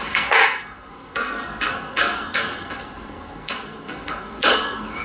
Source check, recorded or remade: remade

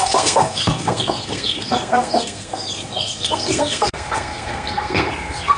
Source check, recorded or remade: remade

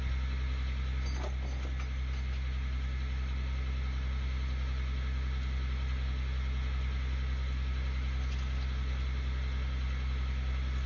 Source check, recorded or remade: recorded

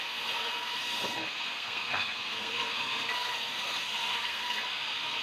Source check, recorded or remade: remade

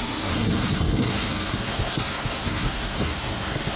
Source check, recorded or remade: remade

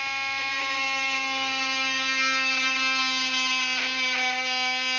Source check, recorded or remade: recorded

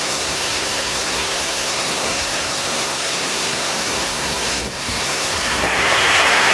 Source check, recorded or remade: remade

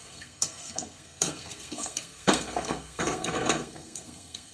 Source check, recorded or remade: remade